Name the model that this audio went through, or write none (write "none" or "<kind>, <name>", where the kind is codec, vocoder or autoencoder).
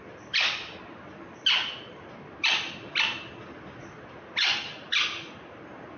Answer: none